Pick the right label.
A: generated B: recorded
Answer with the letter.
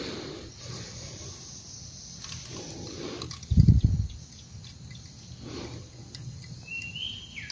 B